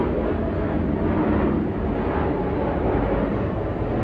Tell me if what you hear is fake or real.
real